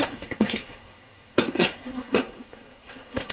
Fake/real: fake